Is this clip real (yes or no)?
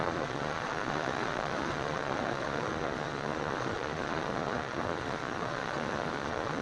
no